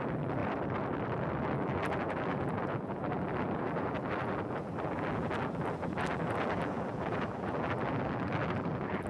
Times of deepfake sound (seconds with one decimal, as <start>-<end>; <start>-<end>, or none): 0.0-0.4; 1.4-9.1